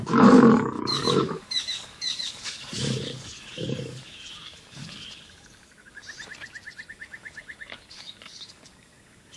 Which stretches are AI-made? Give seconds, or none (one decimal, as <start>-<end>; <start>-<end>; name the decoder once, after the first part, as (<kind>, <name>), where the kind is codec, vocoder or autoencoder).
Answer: 0.0-6.0 (codec, DAC); 6.9-9.4